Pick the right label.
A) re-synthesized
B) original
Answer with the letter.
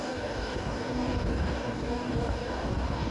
A